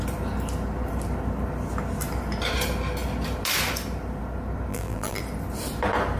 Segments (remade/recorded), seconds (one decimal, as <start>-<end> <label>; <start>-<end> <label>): 0.0-4.7 recorded; 4.7-5.2 remade; 5.2-6.2 recorded